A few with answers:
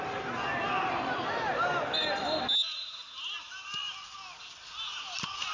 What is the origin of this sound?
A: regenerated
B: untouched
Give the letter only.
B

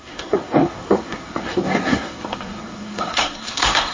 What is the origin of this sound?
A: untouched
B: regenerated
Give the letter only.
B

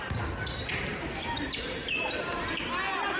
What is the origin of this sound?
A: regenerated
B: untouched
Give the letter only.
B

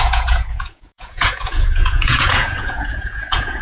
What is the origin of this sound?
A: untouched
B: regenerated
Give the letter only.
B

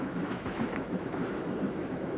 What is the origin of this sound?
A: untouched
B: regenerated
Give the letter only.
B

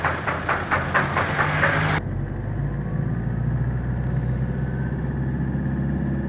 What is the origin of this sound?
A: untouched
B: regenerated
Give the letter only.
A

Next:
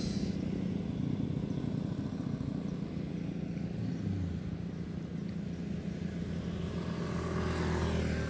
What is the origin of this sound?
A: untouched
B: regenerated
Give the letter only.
A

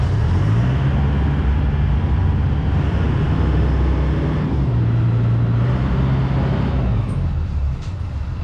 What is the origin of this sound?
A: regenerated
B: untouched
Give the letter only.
B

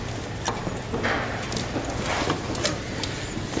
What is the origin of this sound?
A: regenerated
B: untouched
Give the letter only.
B